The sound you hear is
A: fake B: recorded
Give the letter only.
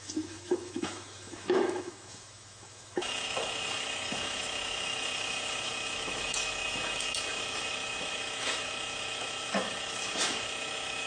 A